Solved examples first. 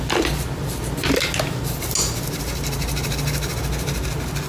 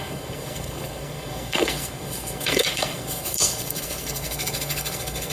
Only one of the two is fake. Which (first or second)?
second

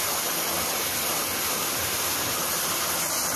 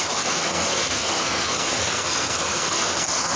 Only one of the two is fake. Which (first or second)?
second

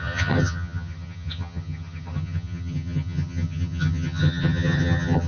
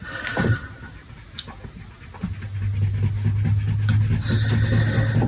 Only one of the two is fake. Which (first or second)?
first